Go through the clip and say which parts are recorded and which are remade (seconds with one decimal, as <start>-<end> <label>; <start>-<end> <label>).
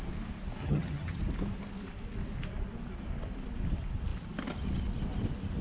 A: 0.0-0.6 recorded; 0.6-1.2 remade; 1.2-5.6 recorded